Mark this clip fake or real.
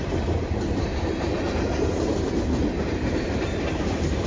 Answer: fake